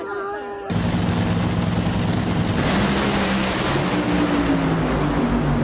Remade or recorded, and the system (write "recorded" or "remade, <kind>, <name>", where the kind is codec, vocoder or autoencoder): recorded